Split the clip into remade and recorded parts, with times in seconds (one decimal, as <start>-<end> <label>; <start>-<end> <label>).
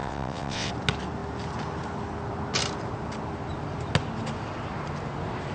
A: 0.0-0.7 remade; 0.7-5.5 recorded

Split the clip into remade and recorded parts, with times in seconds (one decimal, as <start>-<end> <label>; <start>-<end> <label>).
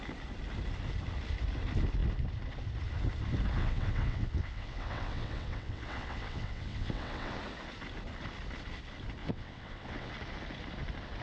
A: 0.0-3.6 recorded; 3.6-7.4 remade; 7.4-9.2 recorded; 9.2-10.1 remade; 10.1-11.2 recorded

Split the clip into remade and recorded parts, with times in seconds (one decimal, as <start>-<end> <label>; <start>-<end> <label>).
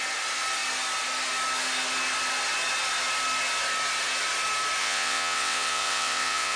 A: 0.0-4.8 recorded; 4.8-6.6 remade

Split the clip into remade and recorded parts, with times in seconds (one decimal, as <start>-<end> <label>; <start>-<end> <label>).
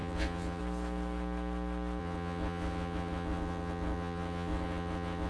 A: 0.0-0.6 remade; 0.6-2.0 recorded; 2.0-5.3 remade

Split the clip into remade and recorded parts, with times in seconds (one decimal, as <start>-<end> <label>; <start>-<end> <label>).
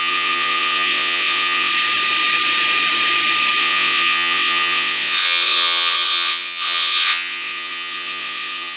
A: 0.0-1.7 remade; 1.7-3.6 recorded; 3.6-8.8 remade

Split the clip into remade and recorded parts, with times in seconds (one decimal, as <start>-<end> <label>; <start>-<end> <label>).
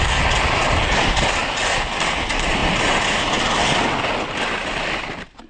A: 0.0-5.5 recorded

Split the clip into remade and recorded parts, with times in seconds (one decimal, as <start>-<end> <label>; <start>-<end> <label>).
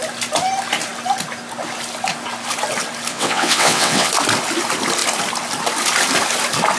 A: 0.0-3.1 recorded; 3.1-4.1 remade; 4.1-6.8 recorded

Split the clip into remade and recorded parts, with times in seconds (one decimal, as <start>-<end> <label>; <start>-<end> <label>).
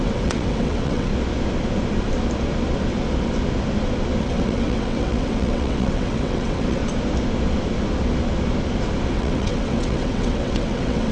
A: 0.0-1.1 remade; 1.1-4.2 recorded; 4.2-6.8 remade; 6.8-9.1 recorded; 9.1-11.1 remade